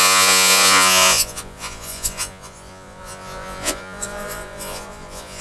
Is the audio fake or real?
fake